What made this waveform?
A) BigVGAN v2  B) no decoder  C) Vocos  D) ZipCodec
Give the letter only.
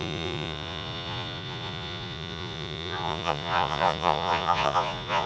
C